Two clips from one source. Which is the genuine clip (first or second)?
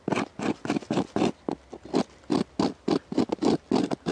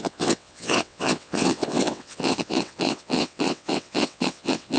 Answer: first